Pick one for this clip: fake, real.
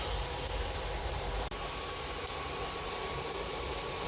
fake